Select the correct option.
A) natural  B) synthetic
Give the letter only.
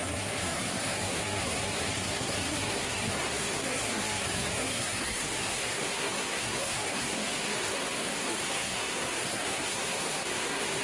B